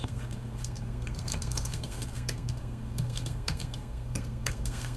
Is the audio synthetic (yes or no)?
yes